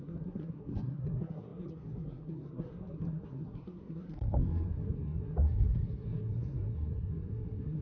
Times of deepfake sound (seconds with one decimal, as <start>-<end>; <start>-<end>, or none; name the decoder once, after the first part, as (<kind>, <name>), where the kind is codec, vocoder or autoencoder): 0.0-7.8 (codec, SNAC)